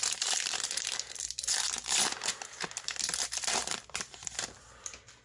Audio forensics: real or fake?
fake